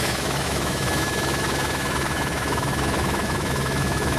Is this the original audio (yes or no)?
no